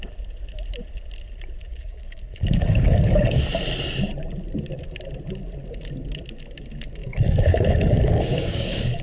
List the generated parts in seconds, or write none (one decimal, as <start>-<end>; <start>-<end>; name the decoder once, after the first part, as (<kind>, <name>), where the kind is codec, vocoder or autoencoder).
1.7-3.4 (codec, DAC); 7.0-9.0